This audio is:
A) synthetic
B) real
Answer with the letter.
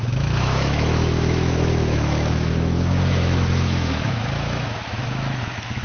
A